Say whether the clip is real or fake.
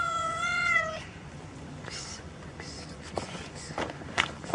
fake